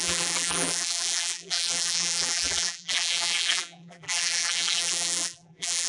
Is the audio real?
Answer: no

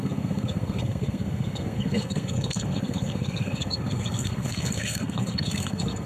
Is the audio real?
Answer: no